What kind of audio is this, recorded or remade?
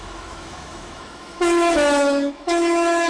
remade